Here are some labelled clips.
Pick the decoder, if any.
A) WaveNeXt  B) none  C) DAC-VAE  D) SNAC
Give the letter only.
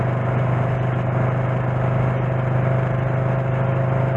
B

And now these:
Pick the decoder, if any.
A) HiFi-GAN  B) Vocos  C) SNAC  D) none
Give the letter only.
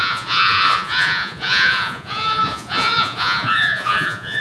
B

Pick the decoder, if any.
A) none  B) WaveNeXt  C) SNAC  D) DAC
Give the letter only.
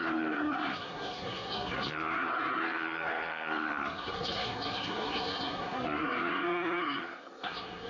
C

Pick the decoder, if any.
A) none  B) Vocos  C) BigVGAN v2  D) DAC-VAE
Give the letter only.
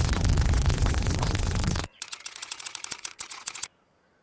B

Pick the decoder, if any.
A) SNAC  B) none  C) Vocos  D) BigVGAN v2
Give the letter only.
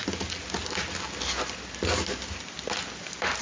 B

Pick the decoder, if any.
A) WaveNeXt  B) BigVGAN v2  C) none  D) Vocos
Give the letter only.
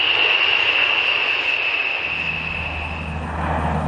C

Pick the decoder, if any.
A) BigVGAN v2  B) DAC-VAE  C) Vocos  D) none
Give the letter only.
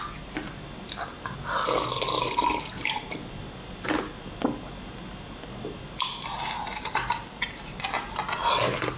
D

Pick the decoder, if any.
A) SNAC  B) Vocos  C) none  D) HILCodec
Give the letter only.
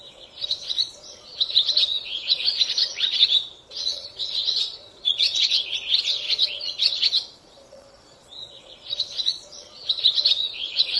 B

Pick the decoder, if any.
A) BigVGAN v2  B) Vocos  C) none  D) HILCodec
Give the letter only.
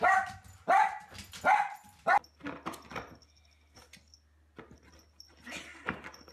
C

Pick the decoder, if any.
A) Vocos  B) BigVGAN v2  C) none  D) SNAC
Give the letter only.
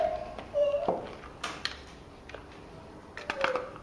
C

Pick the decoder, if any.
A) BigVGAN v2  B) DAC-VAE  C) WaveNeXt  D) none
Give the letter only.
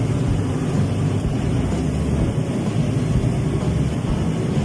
D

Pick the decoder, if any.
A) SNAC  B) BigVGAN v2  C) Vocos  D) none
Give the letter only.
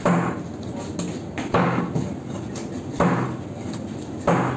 D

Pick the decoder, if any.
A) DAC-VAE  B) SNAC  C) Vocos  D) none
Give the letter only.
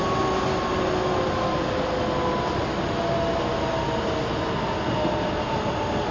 D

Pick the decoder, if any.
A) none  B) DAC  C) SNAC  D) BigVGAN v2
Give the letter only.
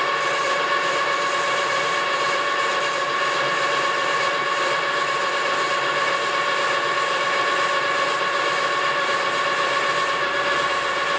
A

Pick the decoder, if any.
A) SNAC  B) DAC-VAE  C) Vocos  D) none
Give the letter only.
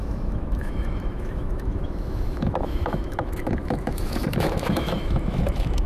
B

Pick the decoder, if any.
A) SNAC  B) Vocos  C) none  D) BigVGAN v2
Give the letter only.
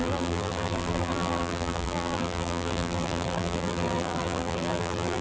D